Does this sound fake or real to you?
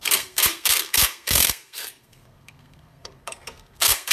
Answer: fake